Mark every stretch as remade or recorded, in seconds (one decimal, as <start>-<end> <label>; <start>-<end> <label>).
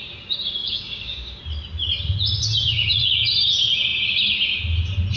0.0-0.6 recorded; 0.6-1.4 remade; 1.4-5.2 recorded